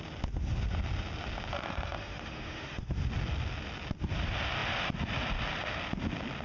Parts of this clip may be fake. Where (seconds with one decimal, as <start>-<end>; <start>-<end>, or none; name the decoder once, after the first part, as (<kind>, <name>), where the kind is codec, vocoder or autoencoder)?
1.5-2.9 (autoencoder, DAC-VAE)

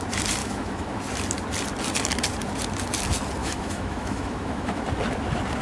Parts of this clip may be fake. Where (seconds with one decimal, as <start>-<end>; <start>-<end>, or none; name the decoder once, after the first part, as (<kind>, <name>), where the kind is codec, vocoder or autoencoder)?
0.4-1.0 (autoencoder, DAC-VAE); 3.4-4.8

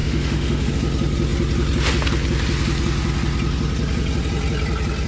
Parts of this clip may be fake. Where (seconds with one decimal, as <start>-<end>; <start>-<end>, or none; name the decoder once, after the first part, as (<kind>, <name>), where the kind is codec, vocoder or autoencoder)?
0.0-0.7 (autoencoder, DAC-VAE)

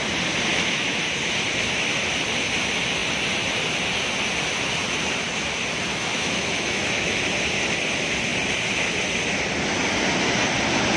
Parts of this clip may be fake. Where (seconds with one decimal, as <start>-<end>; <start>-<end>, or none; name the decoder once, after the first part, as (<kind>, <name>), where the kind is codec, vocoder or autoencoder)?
0.5-1.0 (autoencoder, DAC-VAE); 5.9-7.2

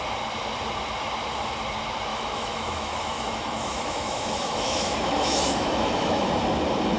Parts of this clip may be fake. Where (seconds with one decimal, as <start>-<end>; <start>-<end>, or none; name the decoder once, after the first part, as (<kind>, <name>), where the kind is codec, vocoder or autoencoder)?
2.1-6.3 (autoencoder, DAC-VAE)

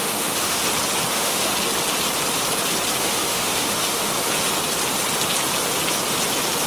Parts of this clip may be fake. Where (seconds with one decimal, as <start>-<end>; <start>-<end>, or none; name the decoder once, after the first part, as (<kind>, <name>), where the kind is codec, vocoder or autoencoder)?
0.0-0.6 (autoencoder, DAC-VAE); 1.1-1.5; 3.0-4.1

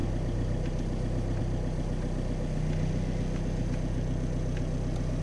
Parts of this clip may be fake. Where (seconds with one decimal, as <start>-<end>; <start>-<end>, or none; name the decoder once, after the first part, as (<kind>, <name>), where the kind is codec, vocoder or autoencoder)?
none